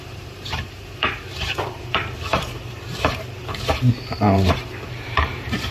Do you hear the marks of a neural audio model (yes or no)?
yes